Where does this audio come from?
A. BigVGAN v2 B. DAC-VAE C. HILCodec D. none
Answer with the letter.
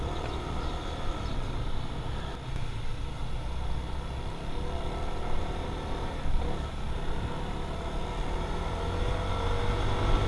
D